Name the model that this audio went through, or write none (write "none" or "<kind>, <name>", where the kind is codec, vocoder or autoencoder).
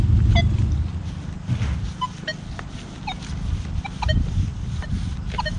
none